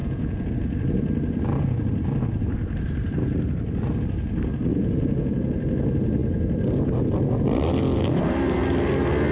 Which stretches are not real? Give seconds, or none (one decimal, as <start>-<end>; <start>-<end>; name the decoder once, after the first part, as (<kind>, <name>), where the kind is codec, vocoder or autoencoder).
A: 0.0-0.5 (vocoder, Vocos); 4.7-5.3